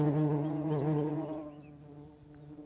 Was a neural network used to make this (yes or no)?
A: no